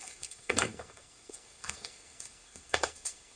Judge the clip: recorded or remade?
remade